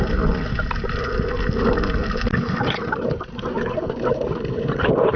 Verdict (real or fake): real